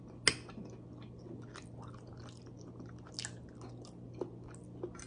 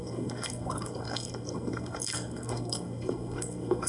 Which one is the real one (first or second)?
first